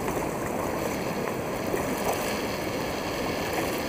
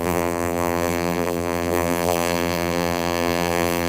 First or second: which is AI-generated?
second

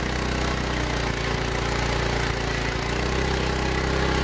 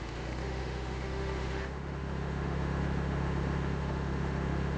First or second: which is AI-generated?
second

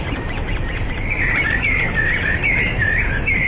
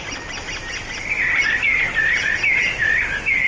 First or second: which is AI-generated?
first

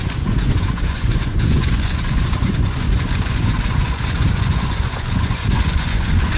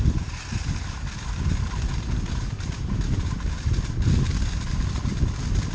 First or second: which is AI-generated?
first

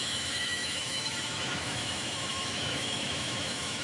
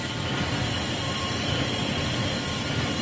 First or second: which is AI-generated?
first